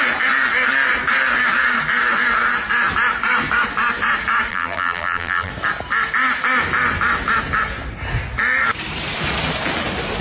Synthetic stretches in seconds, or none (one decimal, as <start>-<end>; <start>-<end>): 4.5-5.5